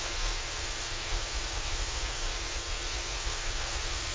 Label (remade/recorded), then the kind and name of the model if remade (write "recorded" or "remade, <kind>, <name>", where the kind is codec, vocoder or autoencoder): remade, codec, SNAC